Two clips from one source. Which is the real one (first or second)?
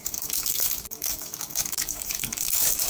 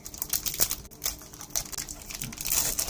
second